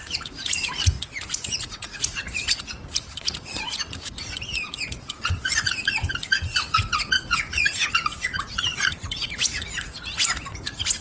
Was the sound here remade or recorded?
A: remade